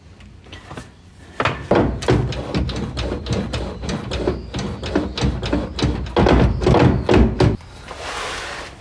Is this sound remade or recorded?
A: recorded